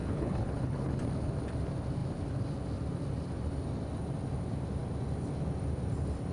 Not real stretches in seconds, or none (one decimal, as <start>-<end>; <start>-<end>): 0.0-0.9